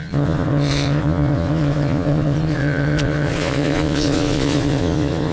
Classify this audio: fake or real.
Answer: fake